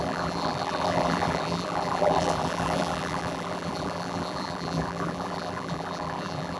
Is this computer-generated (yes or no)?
yes